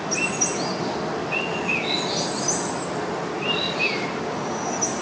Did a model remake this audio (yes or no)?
no